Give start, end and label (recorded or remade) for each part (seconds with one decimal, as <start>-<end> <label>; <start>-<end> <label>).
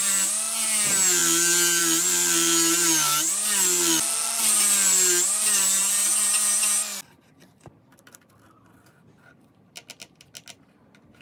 0.0-11.2 recorded